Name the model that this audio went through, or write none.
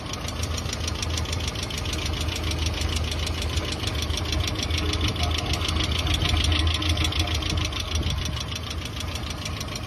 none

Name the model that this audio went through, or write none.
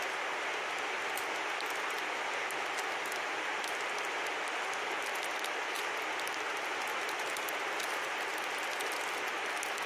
none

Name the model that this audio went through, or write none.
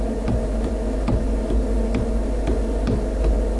none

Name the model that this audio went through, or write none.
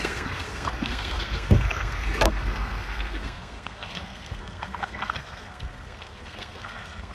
codec, SNAC